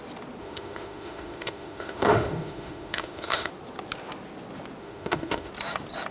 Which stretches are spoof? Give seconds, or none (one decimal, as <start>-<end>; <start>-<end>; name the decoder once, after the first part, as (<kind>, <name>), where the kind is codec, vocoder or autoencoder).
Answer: 0.4-3.5 (autoencoder, DAC-VAE); 4.8-5.5